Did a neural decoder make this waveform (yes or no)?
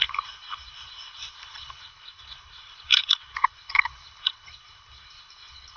yes